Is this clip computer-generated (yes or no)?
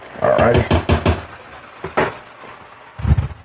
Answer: no